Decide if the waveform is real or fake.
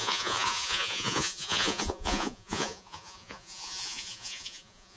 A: fake